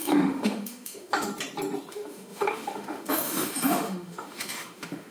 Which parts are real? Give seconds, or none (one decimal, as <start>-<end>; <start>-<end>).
1.3-1.9